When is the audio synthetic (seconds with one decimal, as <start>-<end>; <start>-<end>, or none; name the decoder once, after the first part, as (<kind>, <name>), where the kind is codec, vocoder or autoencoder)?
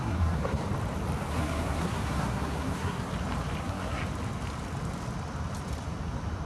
0.0-0.6 (codec, SNAC); 1.3-3.1; 3.6-4.0